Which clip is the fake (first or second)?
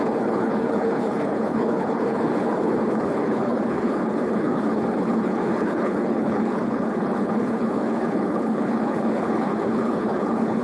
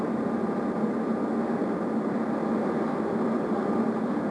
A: first